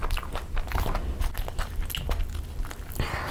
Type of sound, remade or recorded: recorded